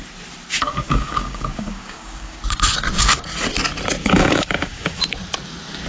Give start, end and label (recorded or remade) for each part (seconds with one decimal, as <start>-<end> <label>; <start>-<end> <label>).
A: 0.0-0.5 recorded; 0.5-2.4 remade; 2.4-4.0 recorded; 4.0-5.0 remade; 5.0-5.9 recorded